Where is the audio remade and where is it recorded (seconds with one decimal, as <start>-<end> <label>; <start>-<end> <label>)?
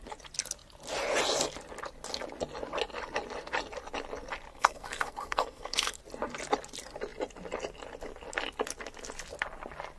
0.0-4.5 recorded; 4.5-6.0 remade; 6.0-10.0 recorded